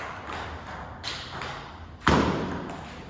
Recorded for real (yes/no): yes